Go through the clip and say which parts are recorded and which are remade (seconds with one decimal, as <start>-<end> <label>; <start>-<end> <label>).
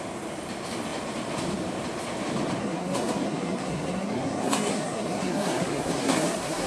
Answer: 0.0-2.6 recorded; 2.6-6.7 remade